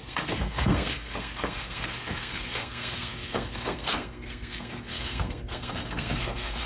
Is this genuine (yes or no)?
no